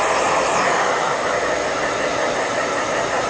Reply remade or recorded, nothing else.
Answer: recorded